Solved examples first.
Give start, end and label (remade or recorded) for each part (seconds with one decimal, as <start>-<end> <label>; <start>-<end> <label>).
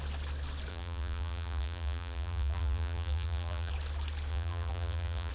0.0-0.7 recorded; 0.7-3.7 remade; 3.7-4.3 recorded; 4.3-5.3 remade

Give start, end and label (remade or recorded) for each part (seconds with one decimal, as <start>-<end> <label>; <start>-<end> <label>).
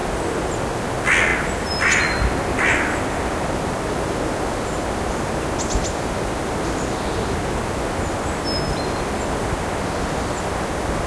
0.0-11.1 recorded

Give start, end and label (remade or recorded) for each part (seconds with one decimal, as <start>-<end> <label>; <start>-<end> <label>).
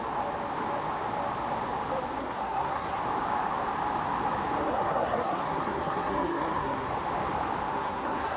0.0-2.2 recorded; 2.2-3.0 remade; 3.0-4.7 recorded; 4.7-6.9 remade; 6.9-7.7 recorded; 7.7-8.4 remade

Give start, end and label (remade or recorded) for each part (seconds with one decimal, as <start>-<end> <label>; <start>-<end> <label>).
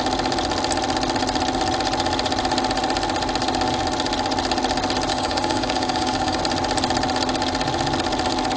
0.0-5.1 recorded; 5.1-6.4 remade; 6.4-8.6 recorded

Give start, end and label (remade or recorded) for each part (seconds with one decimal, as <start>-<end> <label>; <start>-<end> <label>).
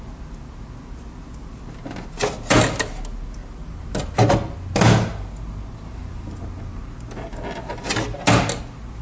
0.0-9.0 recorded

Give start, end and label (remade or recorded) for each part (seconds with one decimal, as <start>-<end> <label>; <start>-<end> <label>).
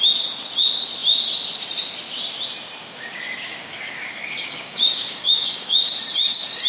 0.0-2.8 recorded; 2.8-5.9 remade; 5.9-6.7 recorded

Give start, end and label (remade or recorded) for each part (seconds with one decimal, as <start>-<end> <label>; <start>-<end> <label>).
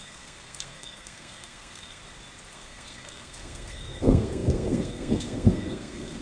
0.0-2.0 remade; 2.0-2.5 recorded; 2.5-6.2 remade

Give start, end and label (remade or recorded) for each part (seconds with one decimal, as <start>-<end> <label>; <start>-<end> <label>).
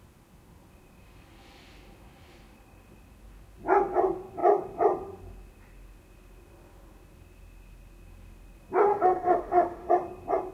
0.0-8.9 recorded; 8.9-9.9 remade; 9.9-10.5 recorded